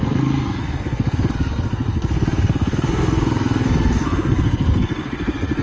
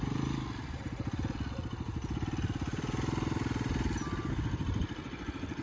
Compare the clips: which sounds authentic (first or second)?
second